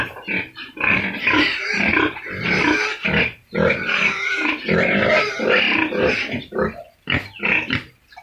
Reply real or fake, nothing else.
fake